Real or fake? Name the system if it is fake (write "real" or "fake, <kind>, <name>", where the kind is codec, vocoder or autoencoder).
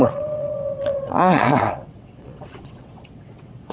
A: fake, vocoder, WaveNeXt